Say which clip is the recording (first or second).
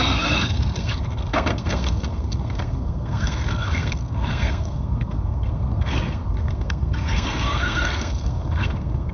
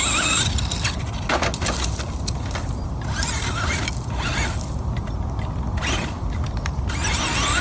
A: second